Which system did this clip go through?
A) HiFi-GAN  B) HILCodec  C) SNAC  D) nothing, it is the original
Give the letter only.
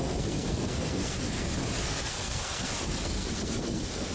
C